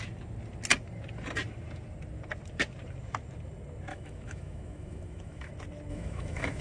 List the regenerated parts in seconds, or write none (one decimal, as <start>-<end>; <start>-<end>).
3.9-5.5; 5.9-6.6

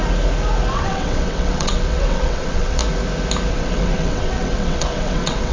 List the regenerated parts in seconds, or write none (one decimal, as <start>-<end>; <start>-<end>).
0.7-2.8; 3.5-5.5

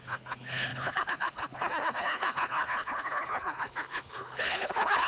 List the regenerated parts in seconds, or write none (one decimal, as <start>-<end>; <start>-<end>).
0.0-5.1

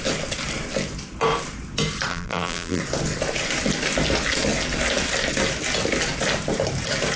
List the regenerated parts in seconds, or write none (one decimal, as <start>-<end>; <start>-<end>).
2.1-2.8

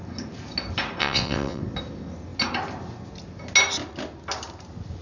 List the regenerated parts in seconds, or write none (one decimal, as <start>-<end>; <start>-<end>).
1.0-1.6

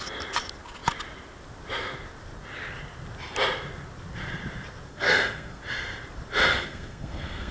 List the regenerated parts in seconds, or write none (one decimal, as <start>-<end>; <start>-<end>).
4.9-5.6; 6.5-7.5

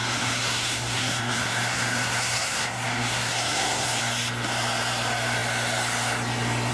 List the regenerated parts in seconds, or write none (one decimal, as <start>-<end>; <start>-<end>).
0.0-4.0